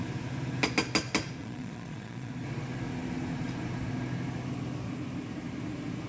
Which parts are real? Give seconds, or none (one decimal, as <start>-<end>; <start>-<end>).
0.0-1.4; 2.3-6.1